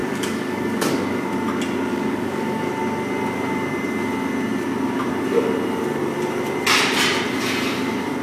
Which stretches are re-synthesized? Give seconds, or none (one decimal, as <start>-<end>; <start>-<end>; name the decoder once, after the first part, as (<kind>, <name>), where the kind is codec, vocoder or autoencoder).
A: 0.0-1.3 (codec, DAC); 1.9-2.7